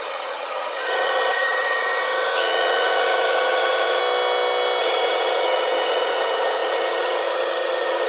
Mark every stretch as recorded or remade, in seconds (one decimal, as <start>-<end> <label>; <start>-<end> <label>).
0.0-4.0 remade; 4.0-4.8 recorded; 4.8-8.1 remade